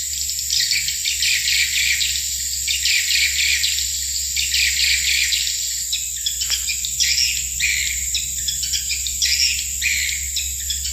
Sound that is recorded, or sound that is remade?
recorded